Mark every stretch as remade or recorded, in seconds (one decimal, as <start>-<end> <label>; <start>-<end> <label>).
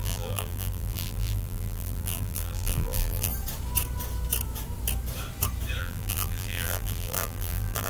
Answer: 0.0-3.3 remade; 3.3-5.8 recorded; 5.8-7.9 remade